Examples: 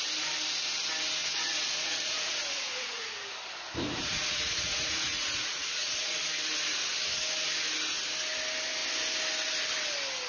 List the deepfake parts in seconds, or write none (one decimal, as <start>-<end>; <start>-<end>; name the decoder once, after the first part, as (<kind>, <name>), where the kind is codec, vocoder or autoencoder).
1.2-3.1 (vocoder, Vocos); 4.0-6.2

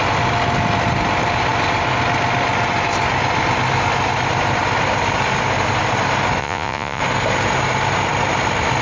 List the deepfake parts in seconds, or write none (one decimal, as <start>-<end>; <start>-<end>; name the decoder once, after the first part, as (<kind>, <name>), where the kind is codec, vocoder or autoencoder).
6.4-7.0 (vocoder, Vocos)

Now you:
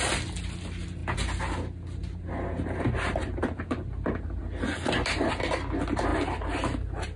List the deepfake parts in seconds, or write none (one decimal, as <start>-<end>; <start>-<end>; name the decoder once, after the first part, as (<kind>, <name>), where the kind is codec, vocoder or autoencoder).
6.1-7.2 (vocoder, BigVGAN v2)

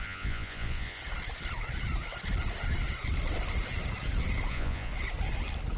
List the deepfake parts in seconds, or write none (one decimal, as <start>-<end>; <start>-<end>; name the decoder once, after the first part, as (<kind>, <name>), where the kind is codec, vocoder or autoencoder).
0.0-1.0 (vocoder, Vocos); 4.5-4.9